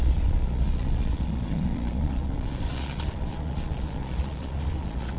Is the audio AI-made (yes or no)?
yes